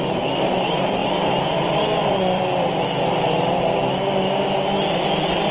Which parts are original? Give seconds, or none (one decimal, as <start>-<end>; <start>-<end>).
0.0-1.0; 3.6-5.5